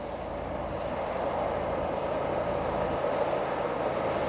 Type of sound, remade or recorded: recorded